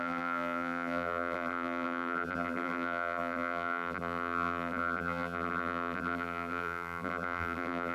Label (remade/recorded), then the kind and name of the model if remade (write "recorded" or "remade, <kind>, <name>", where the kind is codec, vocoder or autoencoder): remade, vocoder, BigVGAN v2